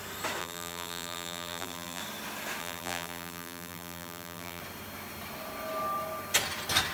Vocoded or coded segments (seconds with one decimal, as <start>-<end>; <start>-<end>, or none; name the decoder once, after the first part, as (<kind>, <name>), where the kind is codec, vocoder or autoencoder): 0.4-2.0 (vocoder, BigVGAN v2); 2.6-4.6